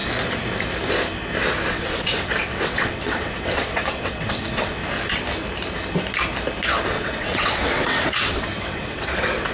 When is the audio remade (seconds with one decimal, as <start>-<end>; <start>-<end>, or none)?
1.7-4.8; 6.8-9.5